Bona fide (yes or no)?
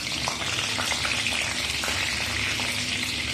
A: yes